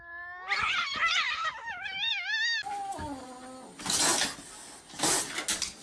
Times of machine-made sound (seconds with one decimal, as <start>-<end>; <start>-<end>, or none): none